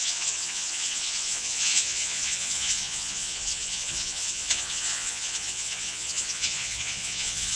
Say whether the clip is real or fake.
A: fake